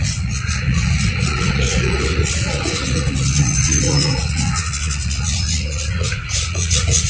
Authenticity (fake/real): fake